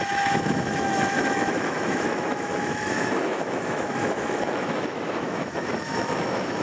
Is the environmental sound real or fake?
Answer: fake